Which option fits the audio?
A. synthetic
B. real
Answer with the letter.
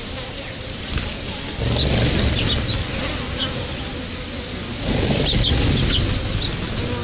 B